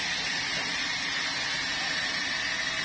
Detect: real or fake real